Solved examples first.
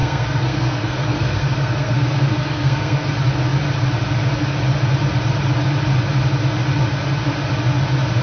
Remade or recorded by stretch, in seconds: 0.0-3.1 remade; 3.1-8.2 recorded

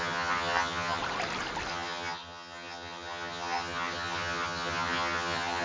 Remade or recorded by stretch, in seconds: 0.0-1.0 remade; 1.0-1.7 recorded; 1.7-5.6 remade